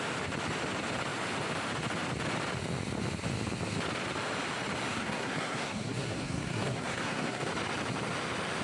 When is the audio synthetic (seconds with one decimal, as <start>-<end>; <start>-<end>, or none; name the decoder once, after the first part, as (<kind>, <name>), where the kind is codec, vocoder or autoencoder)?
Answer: 4.9-7.5 (codec, SNAC)